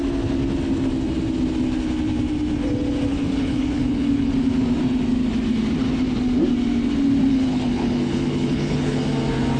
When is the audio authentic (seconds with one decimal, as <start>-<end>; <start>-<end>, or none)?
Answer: 0.0-3.1; 4.3-7.3; 9.0-9.6

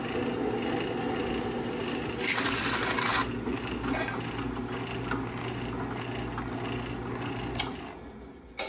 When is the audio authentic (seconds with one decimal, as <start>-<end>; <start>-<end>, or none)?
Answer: 0.0-8.7

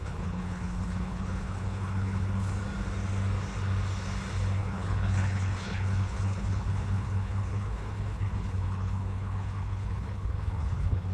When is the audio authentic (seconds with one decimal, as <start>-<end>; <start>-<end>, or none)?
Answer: 2.5-4.6

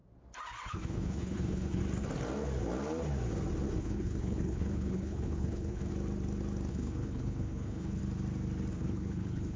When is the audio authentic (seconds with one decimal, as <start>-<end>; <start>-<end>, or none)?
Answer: 0.0-0.7; 1.8-3.8; 5.9-6.7; 8.0-8.7

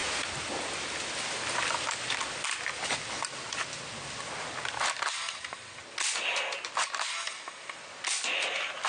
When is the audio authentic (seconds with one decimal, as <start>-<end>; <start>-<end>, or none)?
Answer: 0.0-8.9